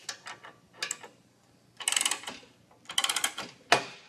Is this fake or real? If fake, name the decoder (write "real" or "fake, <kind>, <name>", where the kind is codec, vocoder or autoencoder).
real